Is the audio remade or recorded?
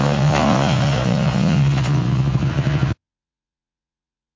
remade